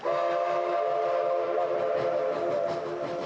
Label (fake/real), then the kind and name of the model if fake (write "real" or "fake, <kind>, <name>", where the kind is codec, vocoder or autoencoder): real